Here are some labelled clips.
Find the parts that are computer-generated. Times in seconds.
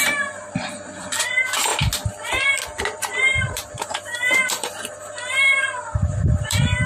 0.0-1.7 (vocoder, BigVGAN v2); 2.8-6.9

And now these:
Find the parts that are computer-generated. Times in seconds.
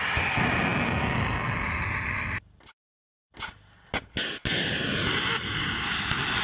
none